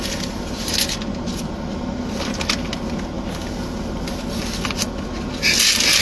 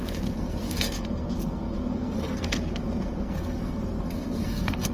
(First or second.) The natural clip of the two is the first